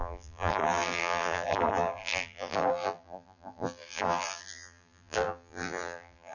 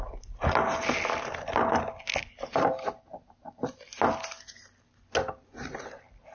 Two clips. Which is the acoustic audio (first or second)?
second